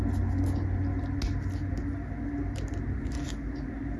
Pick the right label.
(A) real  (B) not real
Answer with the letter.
A